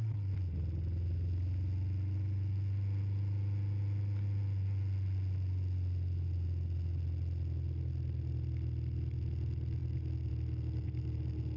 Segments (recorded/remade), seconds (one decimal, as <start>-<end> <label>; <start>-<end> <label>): 0.0-11.6 recorded